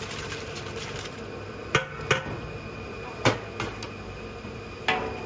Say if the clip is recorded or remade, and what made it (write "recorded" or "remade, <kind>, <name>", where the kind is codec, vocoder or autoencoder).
recorded